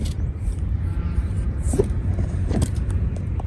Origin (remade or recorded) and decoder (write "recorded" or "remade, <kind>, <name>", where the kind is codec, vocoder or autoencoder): remade, vocoder, BigVGAN v2